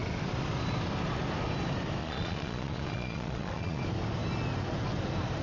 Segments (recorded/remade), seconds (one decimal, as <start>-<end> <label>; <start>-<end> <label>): 0.0-2.0 recorded; 2.0-3.8 remade; 3.8-5.4 recorded